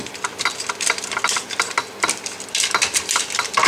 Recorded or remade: remade